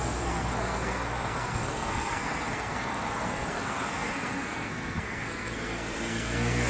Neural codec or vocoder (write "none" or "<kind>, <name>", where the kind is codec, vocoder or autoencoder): codec, SNAC